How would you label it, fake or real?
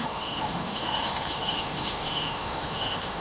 fake